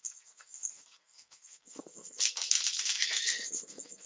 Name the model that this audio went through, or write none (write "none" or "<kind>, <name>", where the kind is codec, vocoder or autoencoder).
codec, SNAC